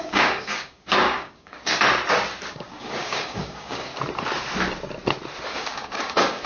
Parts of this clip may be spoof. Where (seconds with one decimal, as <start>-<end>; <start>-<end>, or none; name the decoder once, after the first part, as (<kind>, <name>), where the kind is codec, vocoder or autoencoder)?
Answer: 0.0-1.7 (codec, DAC); 2.5-3.9; 5.4-6.5